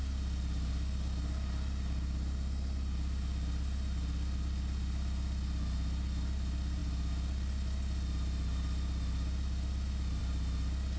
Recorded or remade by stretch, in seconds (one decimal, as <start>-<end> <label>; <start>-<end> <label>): 0.0-11.0 recorded